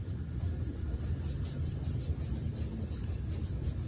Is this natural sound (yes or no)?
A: yes